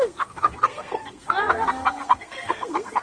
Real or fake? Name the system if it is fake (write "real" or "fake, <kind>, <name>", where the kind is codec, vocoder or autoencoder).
fake, codec, SNAC